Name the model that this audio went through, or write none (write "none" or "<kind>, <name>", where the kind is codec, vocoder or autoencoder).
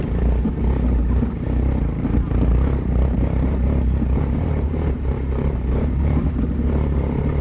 vocoder, BigVGAN v2